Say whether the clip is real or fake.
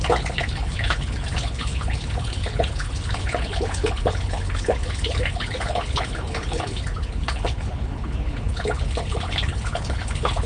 fake